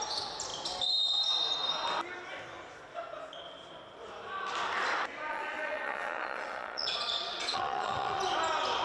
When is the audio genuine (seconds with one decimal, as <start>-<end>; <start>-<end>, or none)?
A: 0.0-5.3; 8.2-8.8